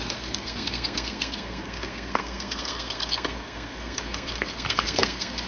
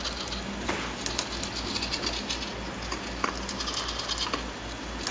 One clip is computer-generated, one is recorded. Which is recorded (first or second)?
second